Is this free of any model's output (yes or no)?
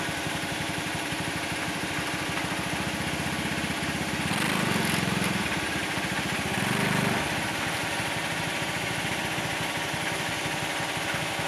yes